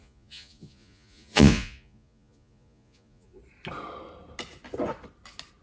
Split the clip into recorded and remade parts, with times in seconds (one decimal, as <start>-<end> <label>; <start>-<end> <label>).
0.0-3.4 remade; 3.4-5.6 recorded